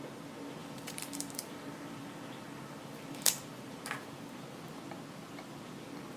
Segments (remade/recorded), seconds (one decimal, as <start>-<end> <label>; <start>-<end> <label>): 0.0-0.6 recorded; 0.6-3.8 remade; 3.8-6.2 recorded